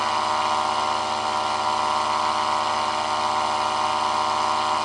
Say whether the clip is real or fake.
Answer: real